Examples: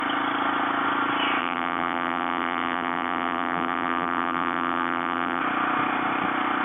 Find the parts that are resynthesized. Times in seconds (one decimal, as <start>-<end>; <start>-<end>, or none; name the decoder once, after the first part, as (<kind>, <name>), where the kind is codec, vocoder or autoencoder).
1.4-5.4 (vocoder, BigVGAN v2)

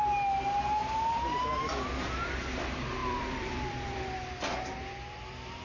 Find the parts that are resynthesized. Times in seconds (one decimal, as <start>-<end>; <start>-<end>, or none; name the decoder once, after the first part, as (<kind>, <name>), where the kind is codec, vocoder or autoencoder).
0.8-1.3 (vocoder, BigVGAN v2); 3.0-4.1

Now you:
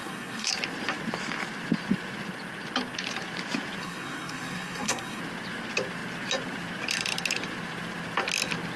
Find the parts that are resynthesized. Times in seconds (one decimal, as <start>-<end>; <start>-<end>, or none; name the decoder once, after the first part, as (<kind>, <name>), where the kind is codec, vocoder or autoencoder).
0.0-0.5 (codec, SNAC); 3.8-5.2